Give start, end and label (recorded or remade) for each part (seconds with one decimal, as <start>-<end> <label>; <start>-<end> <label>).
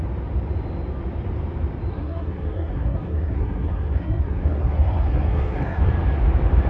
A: 0.0-1.9 recorded; 1.9-5.9 remade; 5.9-6.7 recorded